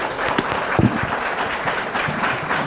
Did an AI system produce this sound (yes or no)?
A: no